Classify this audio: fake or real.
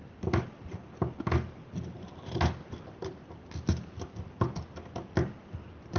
real